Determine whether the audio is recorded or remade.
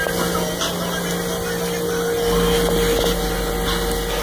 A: recorded